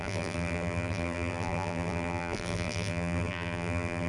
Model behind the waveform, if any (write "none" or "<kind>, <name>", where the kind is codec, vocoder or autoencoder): vocoder, BigVGAN v2